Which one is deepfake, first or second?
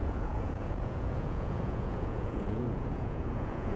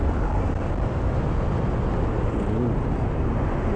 first